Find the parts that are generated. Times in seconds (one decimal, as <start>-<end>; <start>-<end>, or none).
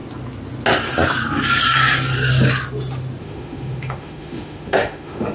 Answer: 3.2-5.3